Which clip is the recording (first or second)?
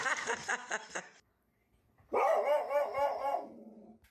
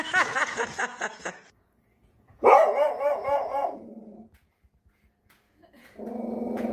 first